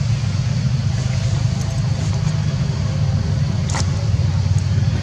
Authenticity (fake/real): real